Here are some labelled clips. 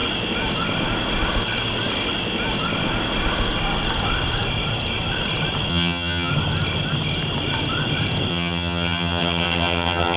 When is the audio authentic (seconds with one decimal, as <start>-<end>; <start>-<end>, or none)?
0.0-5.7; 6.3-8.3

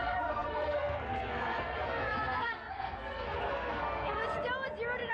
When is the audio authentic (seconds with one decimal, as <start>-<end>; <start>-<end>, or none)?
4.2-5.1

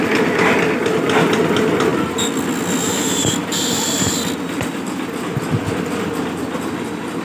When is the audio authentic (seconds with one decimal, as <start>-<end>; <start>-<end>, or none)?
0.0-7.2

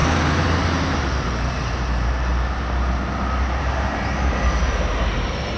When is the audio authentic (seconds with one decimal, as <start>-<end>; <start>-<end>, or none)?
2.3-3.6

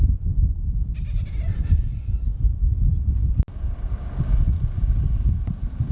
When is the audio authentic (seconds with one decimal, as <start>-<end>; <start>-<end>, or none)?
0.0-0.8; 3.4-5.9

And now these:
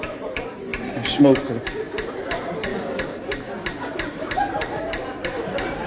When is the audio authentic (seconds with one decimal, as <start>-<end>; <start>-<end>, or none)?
0.7-1.2; 2.7-4.5

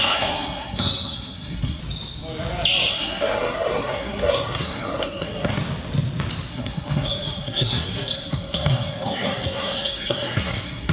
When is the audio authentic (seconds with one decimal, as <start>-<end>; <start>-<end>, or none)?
1.8-2.9; 5.6-6.5